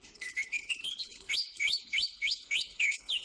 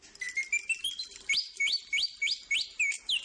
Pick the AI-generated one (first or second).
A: first